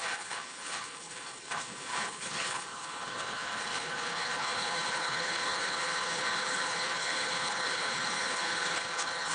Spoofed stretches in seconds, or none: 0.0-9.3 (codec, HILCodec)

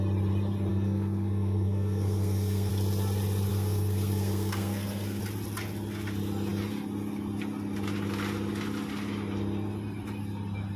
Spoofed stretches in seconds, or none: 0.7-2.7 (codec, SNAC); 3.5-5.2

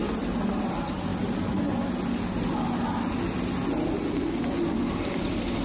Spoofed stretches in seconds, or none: 0.0-1.1 (vocoder, BigVGAN v2); 4.4-5.6